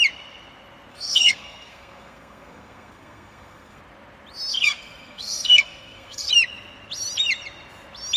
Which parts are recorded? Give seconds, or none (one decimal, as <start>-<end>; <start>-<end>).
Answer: 0.0-0.9; 3.8-4.5; 6.3-8.2